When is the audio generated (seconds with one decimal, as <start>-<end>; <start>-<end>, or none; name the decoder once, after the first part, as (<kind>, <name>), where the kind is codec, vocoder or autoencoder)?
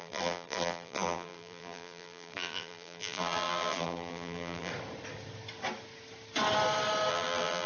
0.0-4.7 (vocoder, BigVGAN v2); 7.1-7.7